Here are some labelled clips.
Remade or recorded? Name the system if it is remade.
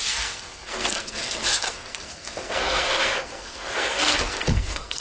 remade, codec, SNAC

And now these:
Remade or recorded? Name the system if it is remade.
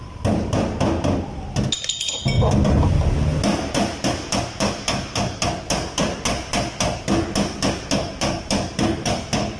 recorded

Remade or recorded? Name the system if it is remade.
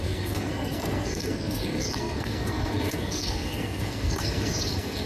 remade, codec, SNAC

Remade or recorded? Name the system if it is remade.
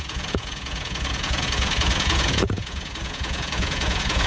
remade, vocoder, Vocos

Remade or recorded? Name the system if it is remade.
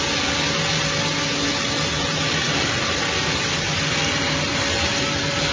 recorded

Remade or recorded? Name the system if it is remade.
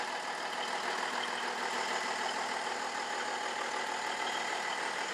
recorded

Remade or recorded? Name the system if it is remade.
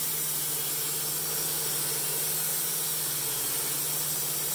recorded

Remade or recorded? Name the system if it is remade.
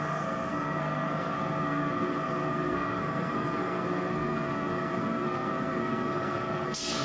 remade, codec, SNAC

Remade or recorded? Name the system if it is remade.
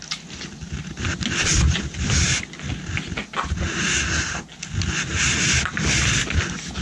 recorded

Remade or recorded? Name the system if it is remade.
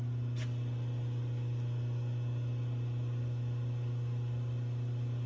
recorded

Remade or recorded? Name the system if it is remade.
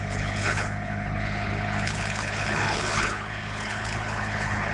remade, codec, HILCodec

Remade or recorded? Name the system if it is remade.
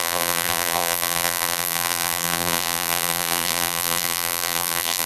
remade, vocoder, BigVGAN v2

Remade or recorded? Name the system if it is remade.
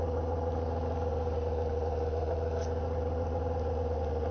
recorded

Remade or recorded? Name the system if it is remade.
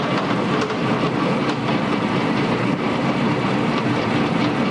recorded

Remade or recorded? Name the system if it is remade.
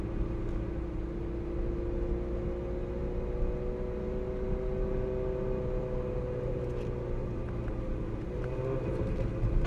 recorded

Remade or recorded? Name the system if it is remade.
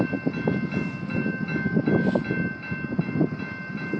recorded